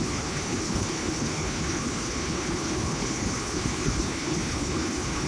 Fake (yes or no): yes